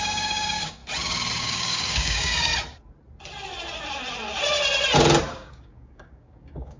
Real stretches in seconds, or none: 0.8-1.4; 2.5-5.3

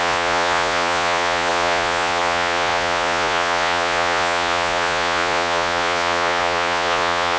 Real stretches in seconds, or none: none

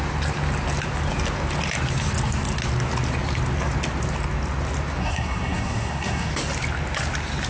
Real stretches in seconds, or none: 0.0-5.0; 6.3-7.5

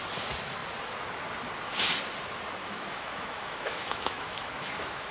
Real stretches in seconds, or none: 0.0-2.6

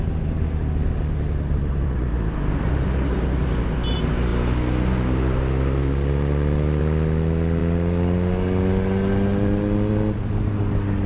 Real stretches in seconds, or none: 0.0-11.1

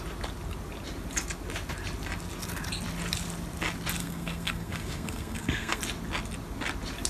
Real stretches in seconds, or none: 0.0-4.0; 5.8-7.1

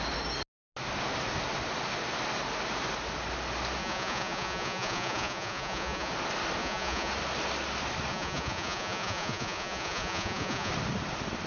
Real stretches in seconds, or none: 0.0-3.8; 6.1-6.6; 7.1-8.1; 10.7-11.5